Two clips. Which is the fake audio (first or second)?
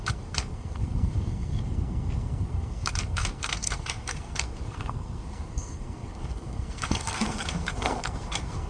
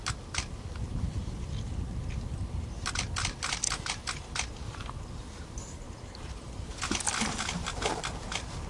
first